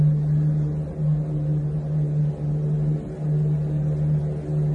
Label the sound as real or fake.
real